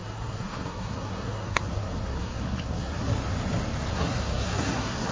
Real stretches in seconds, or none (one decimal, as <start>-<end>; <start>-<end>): 3.1-3.9